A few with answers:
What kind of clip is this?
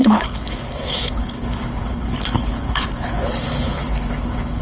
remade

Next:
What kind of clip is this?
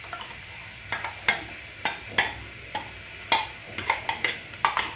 recorded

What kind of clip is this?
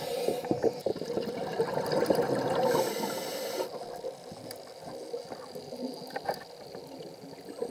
recorded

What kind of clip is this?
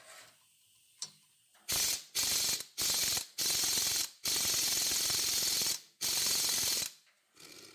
recorded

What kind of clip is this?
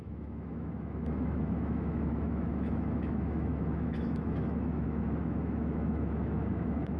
remade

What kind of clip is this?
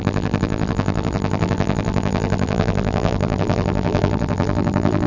remade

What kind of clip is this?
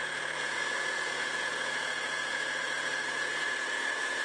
remade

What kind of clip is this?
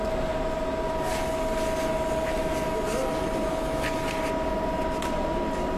recorded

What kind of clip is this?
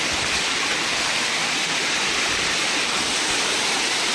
recorded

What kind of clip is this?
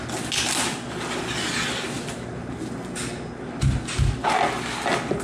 recorded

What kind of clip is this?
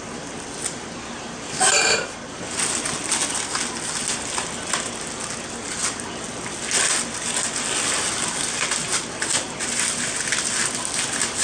recorded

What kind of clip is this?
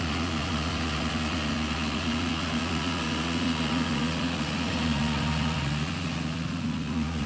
remade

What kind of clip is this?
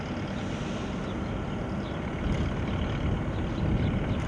recorded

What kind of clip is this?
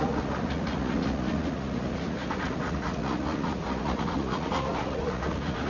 remade